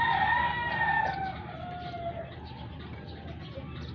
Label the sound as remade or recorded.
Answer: remade